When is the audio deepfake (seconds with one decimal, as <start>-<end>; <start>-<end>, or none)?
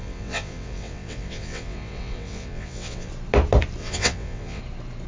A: 0.0-3.1; 3.8-4.6